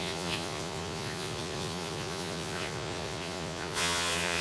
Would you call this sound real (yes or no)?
no